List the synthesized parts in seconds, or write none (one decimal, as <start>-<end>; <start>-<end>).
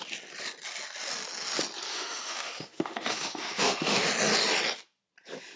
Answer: 1.9-4.1